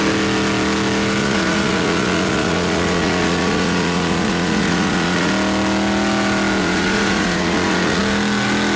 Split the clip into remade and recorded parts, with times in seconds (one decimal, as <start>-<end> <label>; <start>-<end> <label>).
0.0-1.2 recorded; 1.2-5.3 remade; 5.3-6.6 recorded; 6.6-8.0 remade; 8.0-8.8 recorded